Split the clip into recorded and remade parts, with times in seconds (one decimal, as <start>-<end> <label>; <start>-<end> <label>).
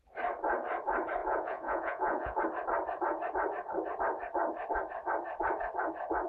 0.0-1.2 recorded; 1.2-2.4 remade; 2.4-6.3 recorded